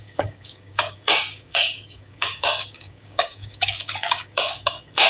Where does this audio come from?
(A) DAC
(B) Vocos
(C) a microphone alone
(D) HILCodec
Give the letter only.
A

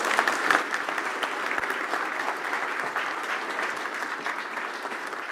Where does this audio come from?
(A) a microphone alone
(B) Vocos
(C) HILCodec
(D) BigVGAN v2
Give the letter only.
D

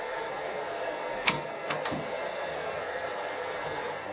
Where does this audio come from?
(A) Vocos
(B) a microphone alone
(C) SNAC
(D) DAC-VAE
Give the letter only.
C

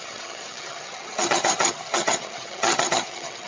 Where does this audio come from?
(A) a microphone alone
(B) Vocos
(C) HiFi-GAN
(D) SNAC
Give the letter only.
C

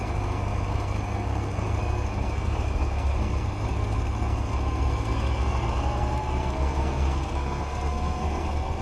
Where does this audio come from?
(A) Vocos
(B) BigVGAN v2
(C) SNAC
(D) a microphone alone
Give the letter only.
C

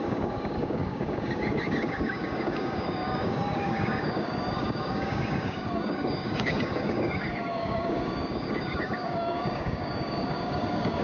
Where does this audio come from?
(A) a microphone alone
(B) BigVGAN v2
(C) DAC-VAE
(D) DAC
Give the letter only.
D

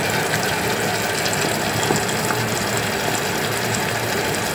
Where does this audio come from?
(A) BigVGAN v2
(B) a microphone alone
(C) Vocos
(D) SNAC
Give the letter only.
B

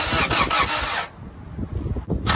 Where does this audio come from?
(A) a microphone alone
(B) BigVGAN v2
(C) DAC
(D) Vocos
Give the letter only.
A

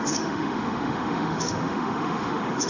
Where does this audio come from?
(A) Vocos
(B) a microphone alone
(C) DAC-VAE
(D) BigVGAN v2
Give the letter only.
C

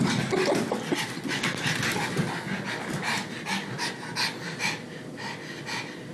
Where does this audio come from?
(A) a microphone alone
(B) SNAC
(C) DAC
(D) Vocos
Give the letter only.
A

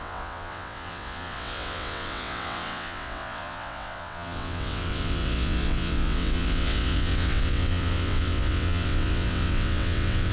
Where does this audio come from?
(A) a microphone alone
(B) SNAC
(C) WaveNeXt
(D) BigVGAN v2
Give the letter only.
C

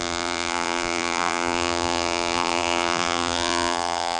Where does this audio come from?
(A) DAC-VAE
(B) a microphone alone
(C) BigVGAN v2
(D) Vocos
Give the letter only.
C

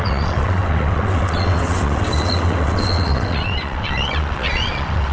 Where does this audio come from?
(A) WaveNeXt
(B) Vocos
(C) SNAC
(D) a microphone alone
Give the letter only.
A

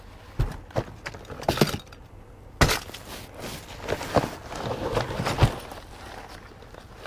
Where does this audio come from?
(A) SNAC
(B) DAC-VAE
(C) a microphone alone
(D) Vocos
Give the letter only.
C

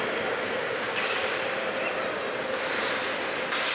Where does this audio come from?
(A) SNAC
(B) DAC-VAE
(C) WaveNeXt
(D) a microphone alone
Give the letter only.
D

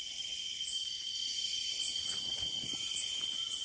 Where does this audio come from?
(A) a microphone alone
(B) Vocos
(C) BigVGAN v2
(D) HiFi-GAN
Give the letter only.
A